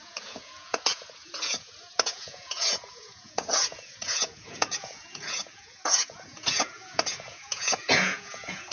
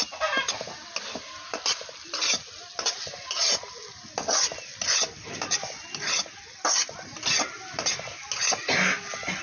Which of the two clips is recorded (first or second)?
second